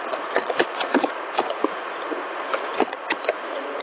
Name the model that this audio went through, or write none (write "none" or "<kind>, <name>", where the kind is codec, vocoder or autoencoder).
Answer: vocoder, Vocos